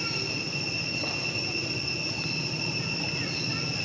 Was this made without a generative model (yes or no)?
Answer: yes